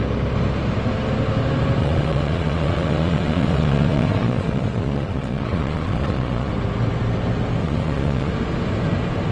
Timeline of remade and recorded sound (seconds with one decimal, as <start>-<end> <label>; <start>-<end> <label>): 0.0-1.8 recorded; 1.8-6.5 remade; 6.5-7.6 recorded; 7.6-8.3 remade; 8.3-9.3 recorded

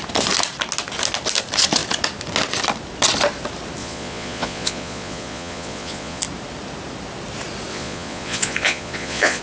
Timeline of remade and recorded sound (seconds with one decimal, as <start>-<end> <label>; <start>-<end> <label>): 0.0-3.8 recorded; 3.8-6.2 remade; 6.2-7.7 recorded; 7.7-9.4 remade

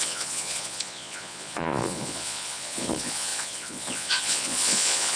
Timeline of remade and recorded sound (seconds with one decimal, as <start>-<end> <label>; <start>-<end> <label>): 0.0-5.2 remade

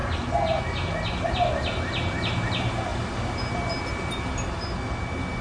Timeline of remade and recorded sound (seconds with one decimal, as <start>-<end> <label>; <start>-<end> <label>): 0.0-5.4 recorded

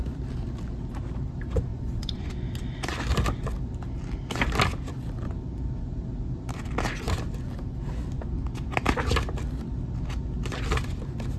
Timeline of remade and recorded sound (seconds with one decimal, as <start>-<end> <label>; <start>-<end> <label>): 0.0-1.7 recorded; 1.7-2.3 remade; 2.3-11.4 recorded

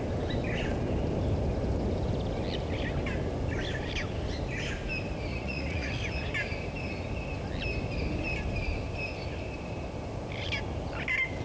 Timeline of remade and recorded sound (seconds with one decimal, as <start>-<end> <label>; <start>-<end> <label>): 0.0-5.3 recorded; 5.3-5.9 remade; 5.9-11.4 recorded

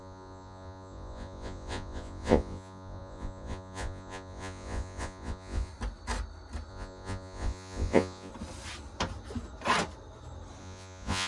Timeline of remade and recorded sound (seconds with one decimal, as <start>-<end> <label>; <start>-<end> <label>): 0.0-5.7 remade; 5.7-6.7 recorded; 6.7-8.3 remade; 8.3-10.6 recorded; 10.6-11.3 remade